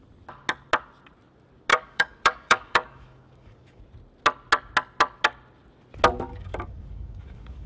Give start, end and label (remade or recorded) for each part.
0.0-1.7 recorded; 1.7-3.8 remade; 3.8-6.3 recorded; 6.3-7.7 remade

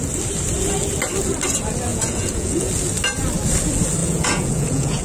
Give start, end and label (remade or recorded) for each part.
0.0-1.9 recorded; 1.9-2.7 remade; 2.7-4.0 recorded; 4.0-5.0 remade

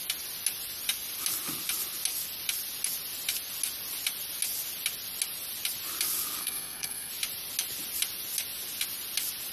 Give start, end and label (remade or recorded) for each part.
0.0-6.4 recorded; 6.4-7.1 remade; 7.1-9.5 recorded

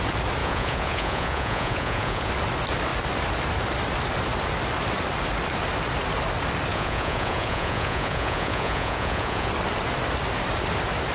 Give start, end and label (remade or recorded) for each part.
0.0-0.4 recorded; 0.4-2.3 remade; 2.3-6.7 recorded; 6.7-9.5 remade; 9.5-11.1 recorded